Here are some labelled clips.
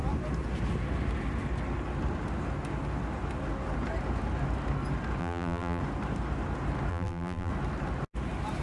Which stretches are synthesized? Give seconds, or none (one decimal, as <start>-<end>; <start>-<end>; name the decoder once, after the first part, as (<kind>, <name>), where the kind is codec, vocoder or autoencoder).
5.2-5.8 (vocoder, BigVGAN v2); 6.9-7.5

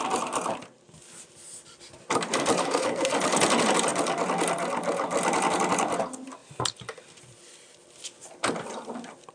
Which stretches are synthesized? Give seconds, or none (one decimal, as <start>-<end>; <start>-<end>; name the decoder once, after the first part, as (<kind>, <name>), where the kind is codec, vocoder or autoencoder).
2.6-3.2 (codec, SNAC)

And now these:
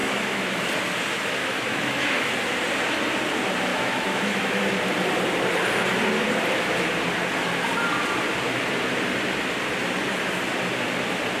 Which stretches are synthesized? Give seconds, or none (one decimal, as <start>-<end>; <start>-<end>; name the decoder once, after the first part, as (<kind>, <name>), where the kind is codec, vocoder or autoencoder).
0.0-0.6 (autoencoder, DAC-VAE); 1.4-2.3; 3.7-4.7